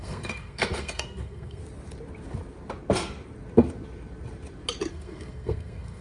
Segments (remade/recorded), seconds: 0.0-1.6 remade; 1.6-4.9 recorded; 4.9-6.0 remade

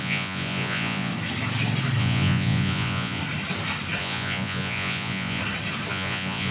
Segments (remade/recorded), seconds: 0.0-1.1 remade; 1.1-2.0 recorded; 2.0-3.2 remade; 3.2-4.0 recorded; 4.0-5.4 remade; 5.4-5.9 recorded; 5.9-6.5 remade

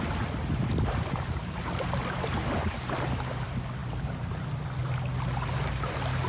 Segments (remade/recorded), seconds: 0.0-6.3 recorded